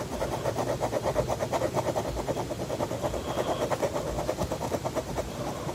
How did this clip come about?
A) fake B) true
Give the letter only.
B